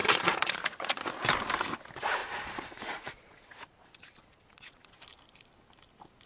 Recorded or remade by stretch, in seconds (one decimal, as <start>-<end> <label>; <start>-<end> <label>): 0.0-1.0 remade; 1.0-2.2 recorded; 2.2-5.0 remade; 5.0-6.3 recorded